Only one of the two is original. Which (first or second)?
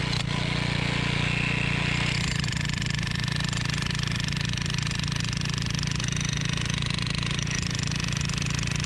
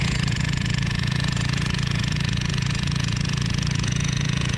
first